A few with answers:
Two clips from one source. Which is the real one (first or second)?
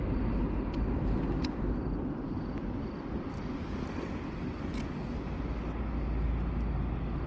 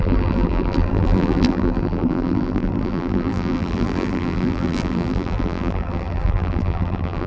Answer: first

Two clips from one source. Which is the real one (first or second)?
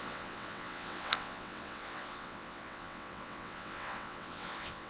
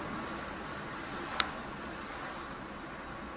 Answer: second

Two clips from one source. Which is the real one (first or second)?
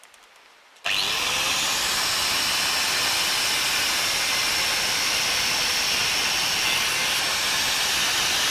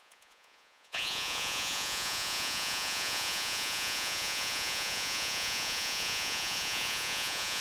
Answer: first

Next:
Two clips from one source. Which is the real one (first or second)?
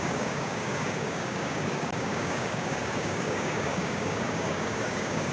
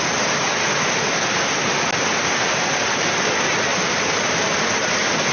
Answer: second